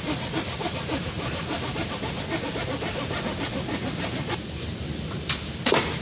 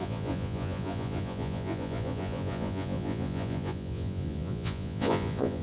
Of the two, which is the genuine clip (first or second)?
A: first